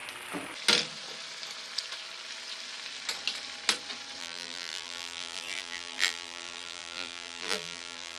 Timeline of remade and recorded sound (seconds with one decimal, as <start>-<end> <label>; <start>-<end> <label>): 0.0-4.2 recorded; 4.2-8.2 remade